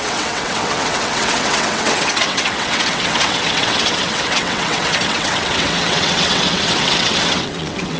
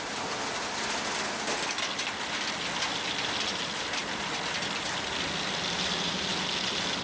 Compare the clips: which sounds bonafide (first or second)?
second